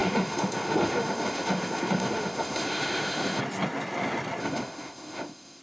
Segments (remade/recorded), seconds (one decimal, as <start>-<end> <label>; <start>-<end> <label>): 0.0-3.4 remade; 3.4-4.4 recorded; 4.4-5.6 remade